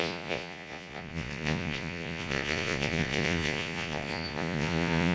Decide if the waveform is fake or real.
fake